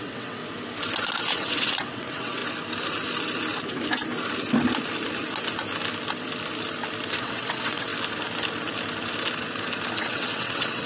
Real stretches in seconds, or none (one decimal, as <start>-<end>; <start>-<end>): 0.4-1.3; 2.4-7.2; 7.9-10.0